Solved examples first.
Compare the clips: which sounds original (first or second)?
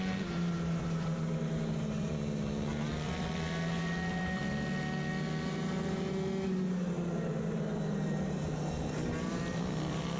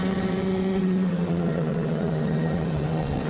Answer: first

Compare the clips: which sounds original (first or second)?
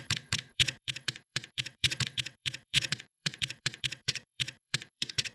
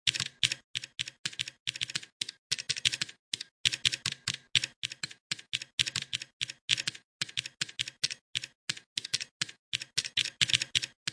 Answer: second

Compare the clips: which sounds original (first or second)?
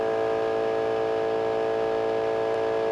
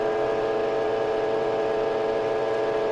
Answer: first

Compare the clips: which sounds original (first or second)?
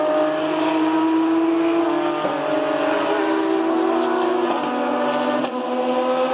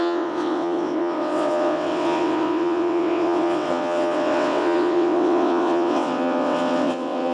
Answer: first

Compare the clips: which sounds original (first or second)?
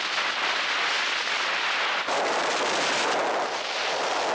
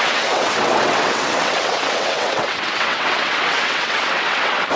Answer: first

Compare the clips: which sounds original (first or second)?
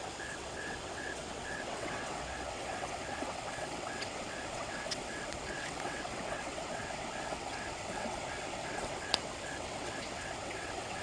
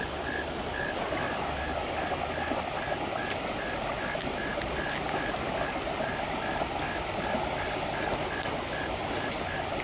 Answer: second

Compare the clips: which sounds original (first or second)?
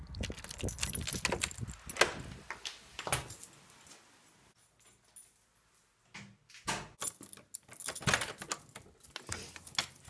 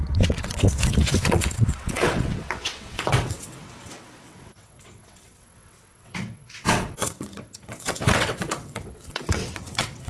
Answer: first